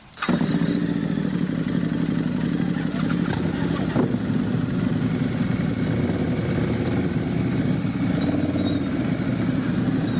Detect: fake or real real